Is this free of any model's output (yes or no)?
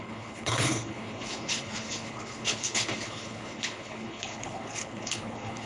no